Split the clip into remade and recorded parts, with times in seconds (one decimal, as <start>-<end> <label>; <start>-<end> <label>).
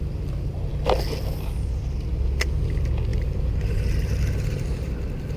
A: 0.0-3.1 recorded; 3.1-4.9 remade; 4.9-5.4 recorded